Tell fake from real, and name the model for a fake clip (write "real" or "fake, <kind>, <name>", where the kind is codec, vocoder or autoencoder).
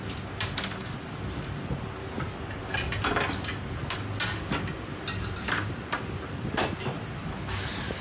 real